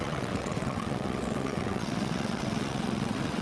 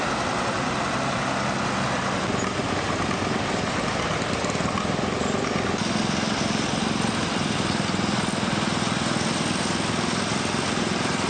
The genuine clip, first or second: second